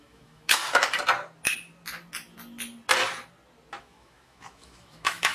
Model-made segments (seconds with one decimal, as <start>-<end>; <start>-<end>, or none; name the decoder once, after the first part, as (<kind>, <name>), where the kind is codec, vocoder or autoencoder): 0.0-0.6 (autoencoder, DAC-VAE); 3.8-5.3